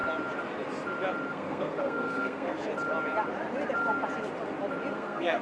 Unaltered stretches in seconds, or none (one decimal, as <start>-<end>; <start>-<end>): 0.0-1.3; 2.7-4.9